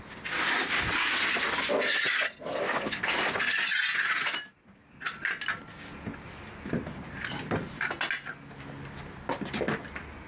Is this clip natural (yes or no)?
yes